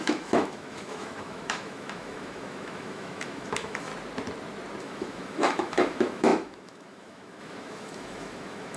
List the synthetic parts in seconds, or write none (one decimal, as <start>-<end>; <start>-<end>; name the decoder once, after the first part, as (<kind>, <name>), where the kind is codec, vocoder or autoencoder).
0.0-3.9 (autoencoder, DAC-VAE); 4.8-8.8